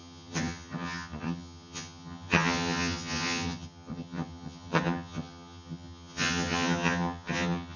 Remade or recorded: remade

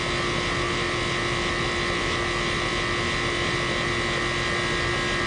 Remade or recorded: recorded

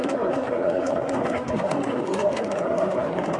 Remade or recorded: remade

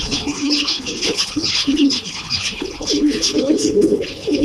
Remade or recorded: remade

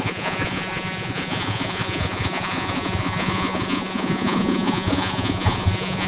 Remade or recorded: remade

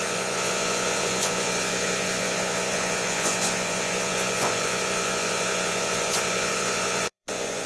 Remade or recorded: remade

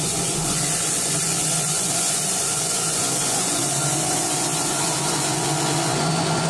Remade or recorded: remade